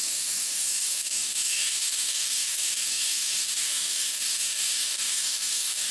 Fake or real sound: fake